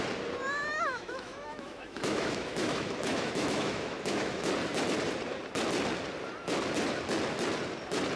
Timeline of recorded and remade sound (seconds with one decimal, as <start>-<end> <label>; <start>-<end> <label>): 0.0-0.7 recorded; 0.7-4.5 remade; 4.5-8.2 recorded

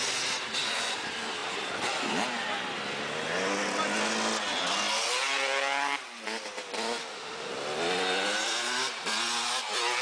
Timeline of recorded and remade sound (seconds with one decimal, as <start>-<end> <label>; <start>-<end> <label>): 0.0-7.0 recorded; 7.0-7.5 remade; 7.5-10.0 recorded

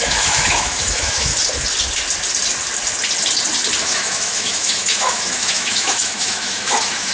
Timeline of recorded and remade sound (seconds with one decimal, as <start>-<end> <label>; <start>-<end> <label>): 0.0-1.3 remade; 1.3-3.8 recorded; 3.8-7.1 remade

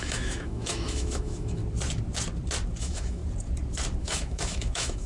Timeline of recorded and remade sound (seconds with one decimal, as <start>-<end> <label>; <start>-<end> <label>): 0.0-1.6 remade; 1.6-2.8 recorded; 2.8-3.2 remade; 3.2-4.0 recorded; 4.0-5.1 remade

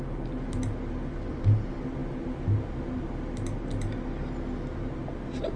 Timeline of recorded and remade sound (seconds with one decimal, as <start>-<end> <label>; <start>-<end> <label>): 0.0-5.6 recorded

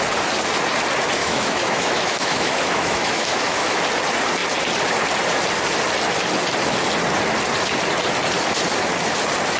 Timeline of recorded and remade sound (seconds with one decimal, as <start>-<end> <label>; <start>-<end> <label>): 0.0-1.2 recorded; 1.2-3.8 remade; 3.8-9.6 recorded